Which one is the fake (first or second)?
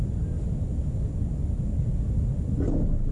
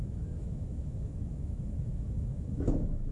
second